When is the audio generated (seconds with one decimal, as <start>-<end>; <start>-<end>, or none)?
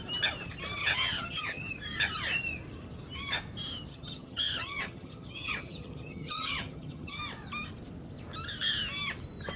0.8-1.7; 3.9-7.2